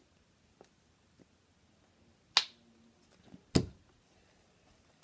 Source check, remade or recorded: recorded